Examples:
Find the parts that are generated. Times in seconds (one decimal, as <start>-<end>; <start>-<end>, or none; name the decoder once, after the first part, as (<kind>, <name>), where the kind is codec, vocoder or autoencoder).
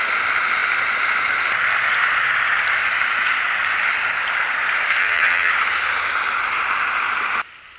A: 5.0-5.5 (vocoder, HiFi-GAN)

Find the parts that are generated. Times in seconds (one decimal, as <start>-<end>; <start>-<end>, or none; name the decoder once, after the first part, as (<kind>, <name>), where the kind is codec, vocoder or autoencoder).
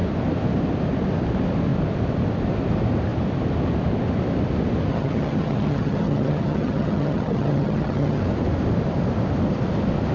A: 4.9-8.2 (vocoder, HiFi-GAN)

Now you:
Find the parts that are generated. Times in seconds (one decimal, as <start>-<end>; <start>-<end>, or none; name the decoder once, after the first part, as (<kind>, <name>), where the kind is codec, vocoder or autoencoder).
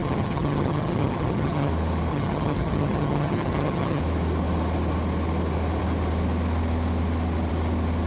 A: 0.0-1.7 (vocoder, HiFi-GAN); 2.1-4.0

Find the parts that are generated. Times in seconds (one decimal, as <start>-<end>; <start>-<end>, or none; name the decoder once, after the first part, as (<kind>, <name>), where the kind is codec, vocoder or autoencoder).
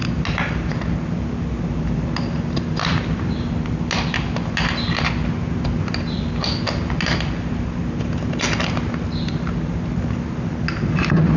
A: none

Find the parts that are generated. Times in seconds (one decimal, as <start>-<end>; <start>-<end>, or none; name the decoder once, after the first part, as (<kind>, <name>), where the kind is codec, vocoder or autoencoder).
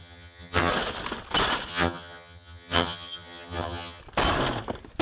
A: 0.0-0.7 (vocoder, HiFi-GAN); 1.7-4.0